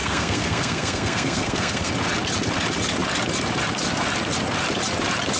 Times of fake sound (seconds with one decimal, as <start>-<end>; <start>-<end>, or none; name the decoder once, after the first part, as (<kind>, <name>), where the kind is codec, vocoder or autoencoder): 0.0-1.9 (codec, SNAC)